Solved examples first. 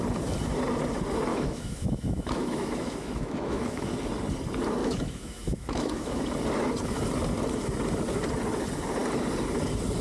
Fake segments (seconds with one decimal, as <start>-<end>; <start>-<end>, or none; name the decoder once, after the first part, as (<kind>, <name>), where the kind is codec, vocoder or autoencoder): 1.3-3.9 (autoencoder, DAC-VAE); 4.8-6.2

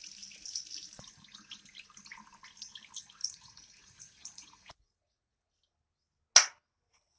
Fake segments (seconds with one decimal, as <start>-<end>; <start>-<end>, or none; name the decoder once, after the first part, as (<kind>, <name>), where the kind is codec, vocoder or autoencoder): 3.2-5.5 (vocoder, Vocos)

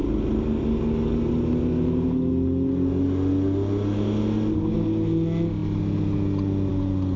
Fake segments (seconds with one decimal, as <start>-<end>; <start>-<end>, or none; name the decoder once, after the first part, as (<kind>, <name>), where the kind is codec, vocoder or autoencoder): none

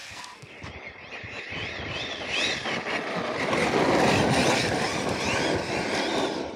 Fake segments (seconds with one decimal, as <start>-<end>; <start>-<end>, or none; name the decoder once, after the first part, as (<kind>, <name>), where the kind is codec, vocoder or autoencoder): 0.0-0.5 (codec, SNAC)

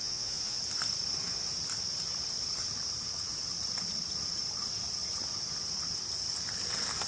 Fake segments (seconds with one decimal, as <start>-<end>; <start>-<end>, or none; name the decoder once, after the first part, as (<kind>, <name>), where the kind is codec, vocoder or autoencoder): 0.0-0.6 (vocoder, Vocos)

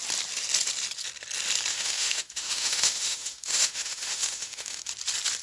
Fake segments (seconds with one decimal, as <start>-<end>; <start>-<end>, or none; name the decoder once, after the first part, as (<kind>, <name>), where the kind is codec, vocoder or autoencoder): 1.7-4.9 (autoencoder, DAC-VAE)